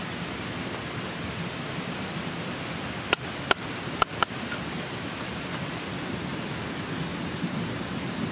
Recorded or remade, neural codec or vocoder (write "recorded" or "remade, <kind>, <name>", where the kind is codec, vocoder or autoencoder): recorded